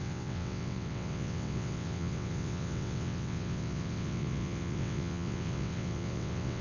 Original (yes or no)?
no